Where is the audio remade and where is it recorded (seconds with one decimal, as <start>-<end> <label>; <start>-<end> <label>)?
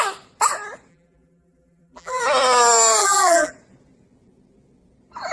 0.0-0.9 recorded; 0.9-2.2 remade; 2.2-3.0 recorded; 3.0-3.5 remade; 3.5-5.3 recorded